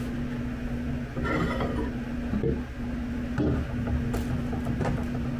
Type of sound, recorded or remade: recorded